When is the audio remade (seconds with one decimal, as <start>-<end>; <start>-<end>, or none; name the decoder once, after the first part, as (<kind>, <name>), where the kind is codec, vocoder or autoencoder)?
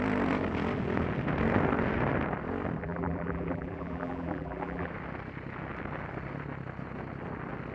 2.8-4.9 (vocoder, BigVGAN v2)